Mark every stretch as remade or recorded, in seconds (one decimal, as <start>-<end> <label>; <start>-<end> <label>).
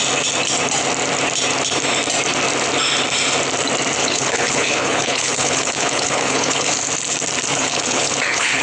0.0-4.0 recorded; 4.0-6.7 remade; 6.7-7.5 recorded; 7.5-8.6 remade